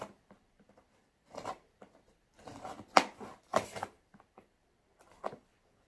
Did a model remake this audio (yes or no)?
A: yes